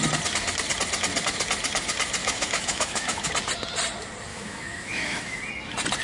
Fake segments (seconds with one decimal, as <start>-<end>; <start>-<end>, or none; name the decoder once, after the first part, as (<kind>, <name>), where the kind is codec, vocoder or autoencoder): 2.2-3.3 (autoencoder, DAC-VAE); 4.3-5.4